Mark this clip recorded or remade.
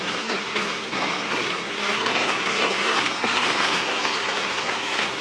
remade